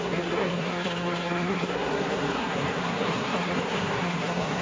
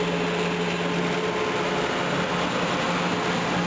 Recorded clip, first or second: second